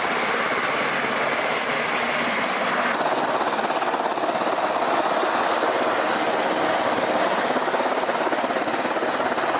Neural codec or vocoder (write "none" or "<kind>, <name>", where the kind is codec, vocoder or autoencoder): none